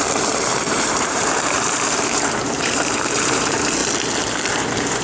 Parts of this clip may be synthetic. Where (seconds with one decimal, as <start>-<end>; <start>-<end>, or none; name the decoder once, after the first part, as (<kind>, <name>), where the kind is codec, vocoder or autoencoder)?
0.0-3.8 (vocoder, BigVGAN v2); 4.5-5.0

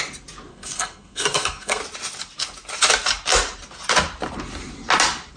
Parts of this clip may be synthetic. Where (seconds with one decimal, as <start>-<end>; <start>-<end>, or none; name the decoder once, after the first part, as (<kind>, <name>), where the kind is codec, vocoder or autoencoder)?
0.5-1.8 (codec, SNAC)

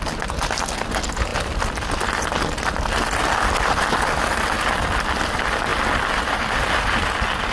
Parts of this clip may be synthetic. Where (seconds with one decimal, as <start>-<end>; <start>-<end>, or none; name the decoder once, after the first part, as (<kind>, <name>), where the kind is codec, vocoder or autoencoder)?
none

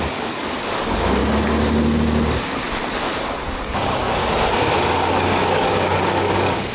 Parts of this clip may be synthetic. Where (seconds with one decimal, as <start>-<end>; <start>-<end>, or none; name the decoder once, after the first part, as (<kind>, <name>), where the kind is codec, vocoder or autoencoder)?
0.0-1.2 (codec, DAC); 3.5-4.2; 5.1-6.7

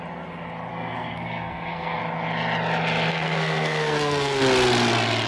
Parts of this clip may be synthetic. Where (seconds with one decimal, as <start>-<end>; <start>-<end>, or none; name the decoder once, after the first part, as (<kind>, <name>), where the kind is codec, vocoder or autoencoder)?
0.7-2.0 (codec, SNAC); 3.1-4.4

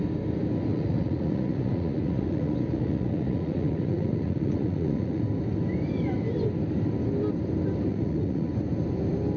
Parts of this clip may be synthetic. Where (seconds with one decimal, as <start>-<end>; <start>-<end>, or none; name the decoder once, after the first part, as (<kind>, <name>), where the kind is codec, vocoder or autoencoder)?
0.7-5.2 (vocoder, Vocos); 7.9-8.5

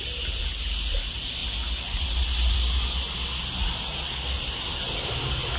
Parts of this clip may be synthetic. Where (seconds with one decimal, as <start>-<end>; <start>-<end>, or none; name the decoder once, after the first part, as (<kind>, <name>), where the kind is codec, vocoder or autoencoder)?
none